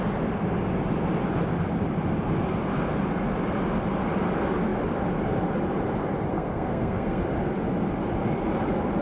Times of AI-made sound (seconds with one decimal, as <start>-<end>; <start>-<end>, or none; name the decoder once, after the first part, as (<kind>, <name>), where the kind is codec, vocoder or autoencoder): 6.3-7.2 (codec, SNAC)